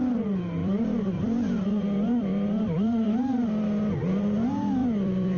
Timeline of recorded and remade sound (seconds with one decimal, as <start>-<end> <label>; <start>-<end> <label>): 0.0-0.6 recorded; 0.6-3.1 remade; 3.1-4.8 recorded; 4.8-5.4 remade